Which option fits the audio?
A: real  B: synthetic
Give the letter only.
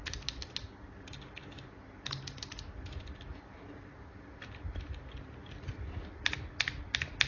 A